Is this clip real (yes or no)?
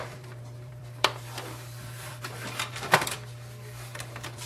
no